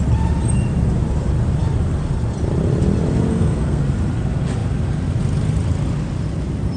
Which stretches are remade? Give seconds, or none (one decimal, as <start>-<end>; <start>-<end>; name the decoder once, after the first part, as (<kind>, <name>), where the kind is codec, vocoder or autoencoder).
3.3-3.8 (codec, SNAC)